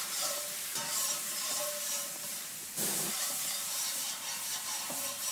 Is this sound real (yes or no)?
no